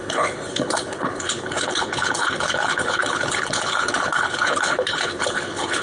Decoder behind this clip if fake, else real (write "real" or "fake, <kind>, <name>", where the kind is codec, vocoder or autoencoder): fake, codec, HILCodec